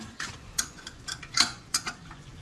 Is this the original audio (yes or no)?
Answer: no